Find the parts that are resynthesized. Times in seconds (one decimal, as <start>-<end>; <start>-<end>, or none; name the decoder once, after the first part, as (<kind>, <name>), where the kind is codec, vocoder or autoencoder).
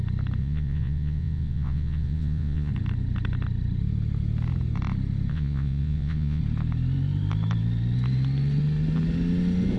0.4-2.7 (vocoder, Vocos); 5.3-6.4